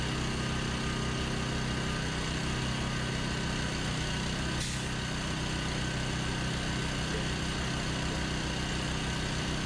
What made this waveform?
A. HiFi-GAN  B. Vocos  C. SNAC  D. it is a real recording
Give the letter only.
D